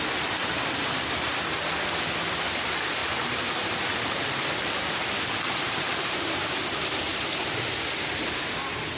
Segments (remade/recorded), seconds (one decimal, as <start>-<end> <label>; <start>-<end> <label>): 0.0-9.0 recorded